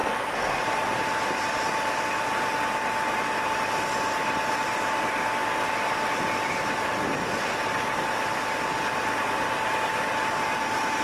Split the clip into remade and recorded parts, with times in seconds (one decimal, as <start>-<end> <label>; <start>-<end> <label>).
0.0-0.6 remade; 0.6-11.0 recorded